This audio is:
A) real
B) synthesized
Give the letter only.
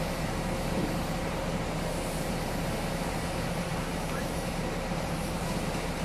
B